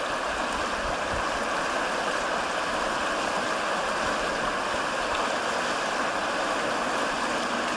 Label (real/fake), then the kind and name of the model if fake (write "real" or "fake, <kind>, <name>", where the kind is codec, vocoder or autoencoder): real